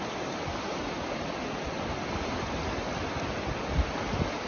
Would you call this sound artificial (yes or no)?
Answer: no